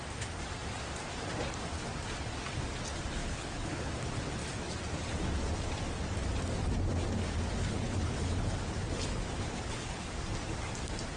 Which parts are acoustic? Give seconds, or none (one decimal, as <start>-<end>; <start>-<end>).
0.0-3.2; 3.9-7.6; 10.2-11.2